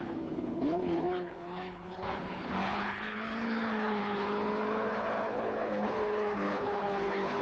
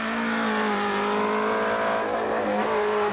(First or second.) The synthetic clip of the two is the first